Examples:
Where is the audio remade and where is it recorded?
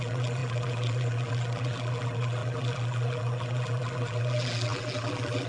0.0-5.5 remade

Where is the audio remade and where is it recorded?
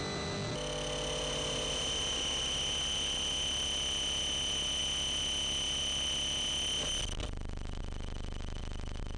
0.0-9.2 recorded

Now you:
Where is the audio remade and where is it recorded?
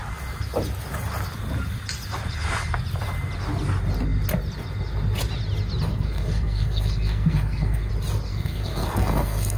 0.0-5.9 recorded; 5.9-7.9 remade; 7.9-8.3 recorded; 8.3-9.6 remade